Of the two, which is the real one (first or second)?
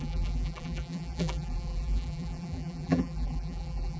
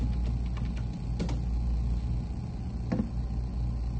second